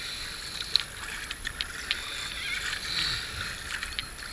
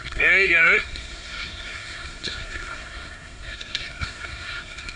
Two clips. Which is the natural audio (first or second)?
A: first